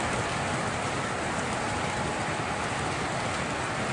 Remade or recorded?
recorded